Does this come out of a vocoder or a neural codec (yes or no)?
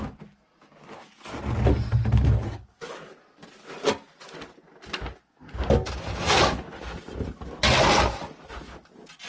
no